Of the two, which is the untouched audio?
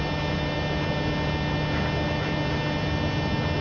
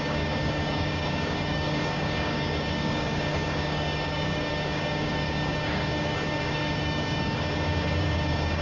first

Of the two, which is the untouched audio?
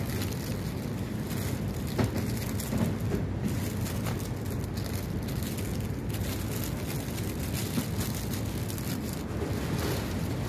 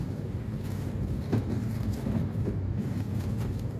first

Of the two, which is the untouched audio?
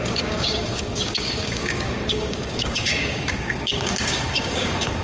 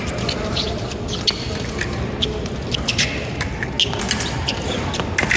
second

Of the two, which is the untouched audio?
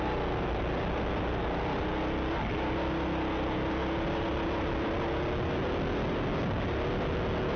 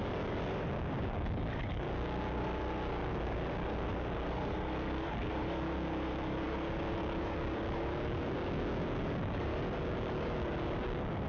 first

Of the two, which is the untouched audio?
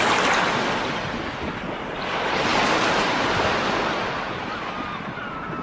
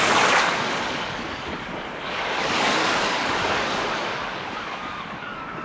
first